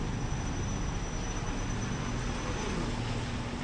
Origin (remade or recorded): recorded